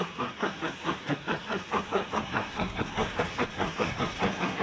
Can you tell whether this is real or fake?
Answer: fake